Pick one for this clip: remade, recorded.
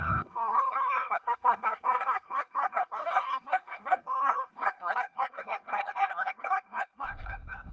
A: remade